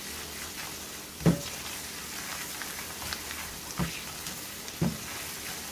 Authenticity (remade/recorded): recorded